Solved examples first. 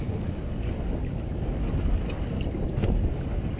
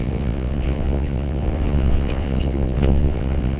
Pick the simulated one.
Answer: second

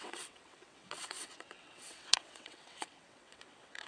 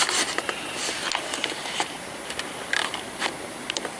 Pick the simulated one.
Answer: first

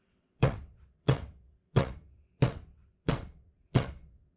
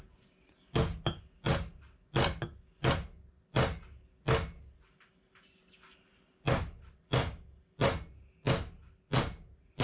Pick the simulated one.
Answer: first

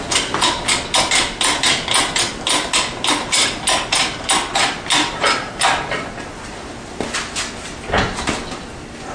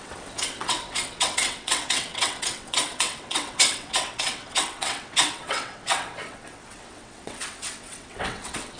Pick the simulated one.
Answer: second